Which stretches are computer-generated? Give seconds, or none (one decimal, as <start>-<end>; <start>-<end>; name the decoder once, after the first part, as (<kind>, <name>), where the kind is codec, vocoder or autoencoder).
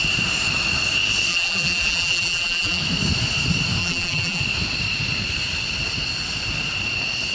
1.3-2.8 (vocoder, BigVGAN v2); 3.8-4.4